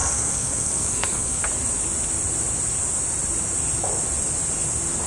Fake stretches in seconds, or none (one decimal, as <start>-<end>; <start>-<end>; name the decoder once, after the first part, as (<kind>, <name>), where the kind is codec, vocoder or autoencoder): 0.0-1.4 (codec, SNAC)

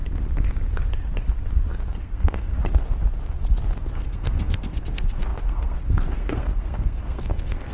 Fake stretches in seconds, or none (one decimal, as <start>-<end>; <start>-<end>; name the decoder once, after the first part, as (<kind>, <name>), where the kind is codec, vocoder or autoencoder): 2.0-2.5 (codec, SNAC); 3.9-7.7

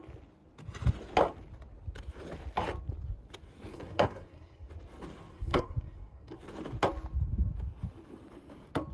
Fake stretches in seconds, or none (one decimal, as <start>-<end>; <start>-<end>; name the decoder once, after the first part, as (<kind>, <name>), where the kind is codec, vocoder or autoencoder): 3.7-4.7 (codec, SNAC); 5.3-6.4

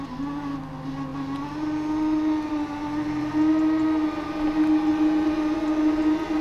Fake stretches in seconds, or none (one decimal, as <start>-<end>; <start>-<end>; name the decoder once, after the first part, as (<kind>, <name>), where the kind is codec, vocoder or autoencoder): none

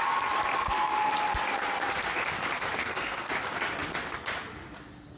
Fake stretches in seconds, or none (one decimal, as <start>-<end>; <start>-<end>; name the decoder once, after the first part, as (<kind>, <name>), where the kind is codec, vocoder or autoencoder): 0.5-1.1 (codec, SNAC); 2.8-3.3

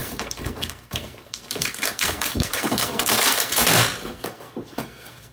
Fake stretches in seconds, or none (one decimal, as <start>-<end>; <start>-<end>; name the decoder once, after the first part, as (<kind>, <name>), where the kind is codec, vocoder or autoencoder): 0.0-5.3 (codec, SNAC)

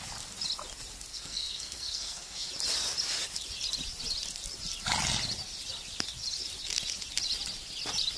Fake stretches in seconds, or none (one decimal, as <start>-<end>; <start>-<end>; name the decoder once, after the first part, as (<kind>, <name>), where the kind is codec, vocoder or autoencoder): 1.1-2.5 (codec, SNAC)